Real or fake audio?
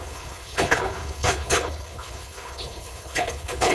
fake